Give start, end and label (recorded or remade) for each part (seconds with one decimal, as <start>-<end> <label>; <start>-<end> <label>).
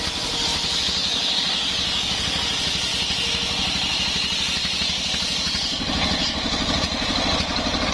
0.0-1.0 recorded; 1.0-2.4 remade; 2.4-7.9 recorded